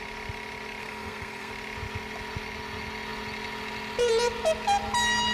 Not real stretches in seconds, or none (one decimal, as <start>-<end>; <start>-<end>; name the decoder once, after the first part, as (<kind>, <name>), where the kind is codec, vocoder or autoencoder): 0.8-1.5 (codec, SNAC)